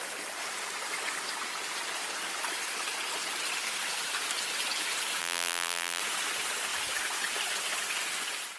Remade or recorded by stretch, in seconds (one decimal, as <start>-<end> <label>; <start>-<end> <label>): 0.0-5.2 recorded; 5.2-6.0 remade; 6.0-8.6 recorded